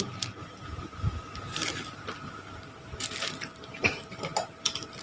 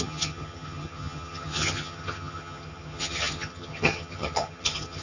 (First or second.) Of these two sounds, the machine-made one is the second